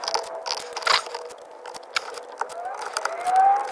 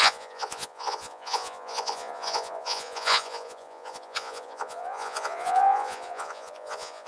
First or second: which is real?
first